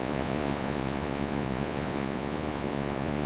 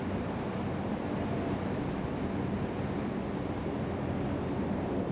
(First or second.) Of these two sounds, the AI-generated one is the first